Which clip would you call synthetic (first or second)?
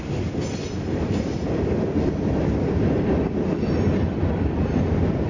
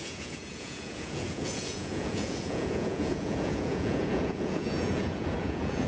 second